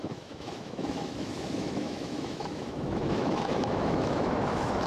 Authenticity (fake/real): fake